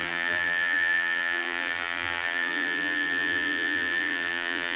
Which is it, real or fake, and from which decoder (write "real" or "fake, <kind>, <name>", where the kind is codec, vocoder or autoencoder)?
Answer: fake, vocoder, BigVGAN v2